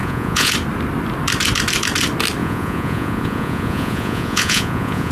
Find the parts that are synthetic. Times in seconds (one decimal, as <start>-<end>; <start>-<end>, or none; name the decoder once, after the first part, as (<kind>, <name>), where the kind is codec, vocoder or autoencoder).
0.0-0.5 (vocoder, Vocos); 2.4-5.1